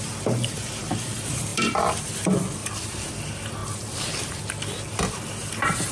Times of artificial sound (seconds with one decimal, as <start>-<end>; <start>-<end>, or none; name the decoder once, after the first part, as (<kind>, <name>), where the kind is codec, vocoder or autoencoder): 2.6-3.1 (vocoder, BigVGAN v2); 3.6-4.4